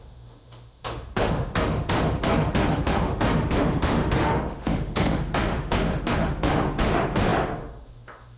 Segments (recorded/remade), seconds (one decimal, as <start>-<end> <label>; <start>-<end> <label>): 0.0-8.4 remade